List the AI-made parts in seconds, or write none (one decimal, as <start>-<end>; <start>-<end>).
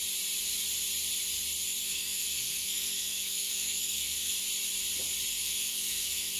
1.8-4.4; 5.3-6.4